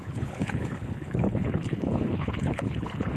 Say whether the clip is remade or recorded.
remade